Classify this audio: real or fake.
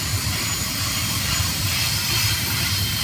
fake